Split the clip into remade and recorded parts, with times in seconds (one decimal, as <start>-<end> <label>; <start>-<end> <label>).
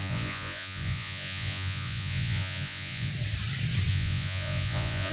0.0-3.1 remade; 3.1-3.9 recorded; 3.9-5.1 remade